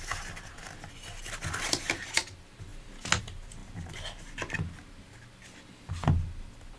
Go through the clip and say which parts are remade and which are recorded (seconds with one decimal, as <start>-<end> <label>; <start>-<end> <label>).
0.0-6.8 recorded